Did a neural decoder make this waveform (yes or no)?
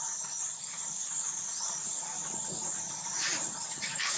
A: no